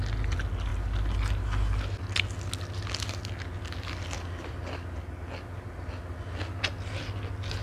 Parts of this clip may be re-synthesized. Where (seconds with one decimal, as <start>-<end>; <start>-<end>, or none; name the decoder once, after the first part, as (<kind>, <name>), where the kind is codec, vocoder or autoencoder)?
none